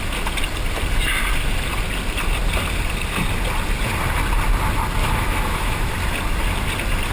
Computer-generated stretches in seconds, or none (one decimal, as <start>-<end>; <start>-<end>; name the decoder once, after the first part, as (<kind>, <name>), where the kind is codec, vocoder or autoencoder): 5.0-5.9 (autoencoder, DAC-VAE)